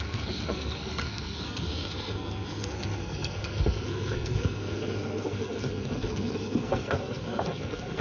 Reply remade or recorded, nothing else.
remade